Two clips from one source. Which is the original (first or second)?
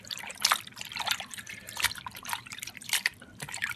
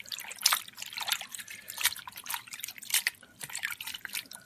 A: second